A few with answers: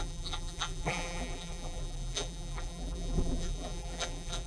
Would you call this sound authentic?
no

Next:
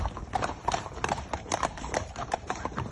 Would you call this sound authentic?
no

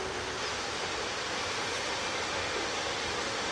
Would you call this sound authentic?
no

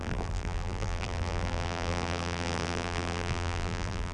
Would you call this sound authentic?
no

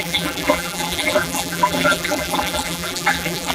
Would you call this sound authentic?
no